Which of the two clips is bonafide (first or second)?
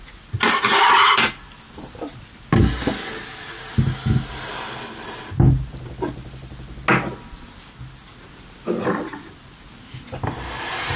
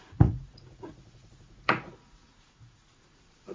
first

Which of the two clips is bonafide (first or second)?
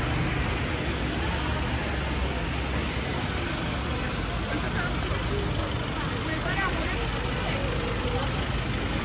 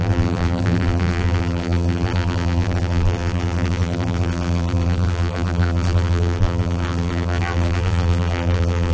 first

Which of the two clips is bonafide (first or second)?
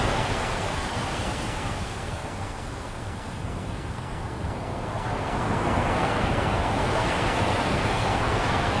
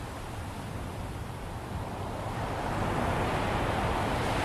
second